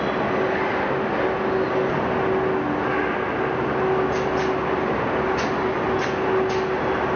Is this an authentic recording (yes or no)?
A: yes